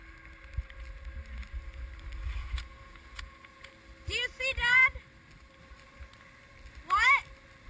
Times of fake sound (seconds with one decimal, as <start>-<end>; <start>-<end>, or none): 2.4-3.7